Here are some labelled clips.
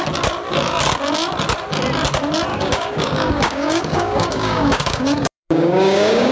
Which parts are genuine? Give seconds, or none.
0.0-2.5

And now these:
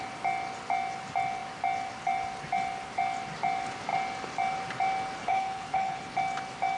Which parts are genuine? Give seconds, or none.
0.0-5.2; 6.0-6.8

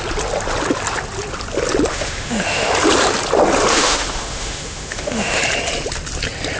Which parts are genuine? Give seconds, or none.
0.0-1.9; 2.7-3.7; 5.4-6.6

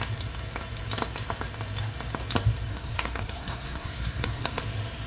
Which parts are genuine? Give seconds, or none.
0.0-2.7; 4.6-5.1

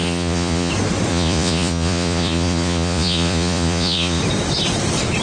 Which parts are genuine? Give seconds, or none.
0.7-1.1; 4.2-5.2

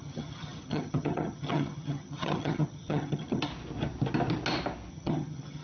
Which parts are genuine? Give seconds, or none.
3.5-4.9

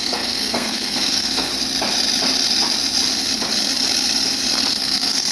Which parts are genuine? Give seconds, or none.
1.5-4.7